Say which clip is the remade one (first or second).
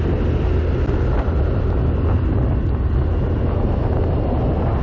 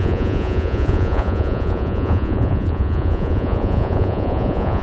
second